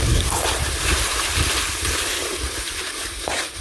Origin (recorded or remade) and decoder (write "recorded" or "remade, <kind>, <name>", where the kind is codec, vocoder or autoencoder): remade, vocoder, BigVGAN v2